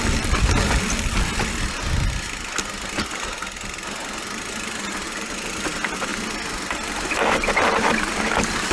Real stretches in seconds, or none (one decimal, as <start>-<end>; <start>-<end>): 0.0-8.7